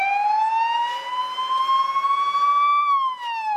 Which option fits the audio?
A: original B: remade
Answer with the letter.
A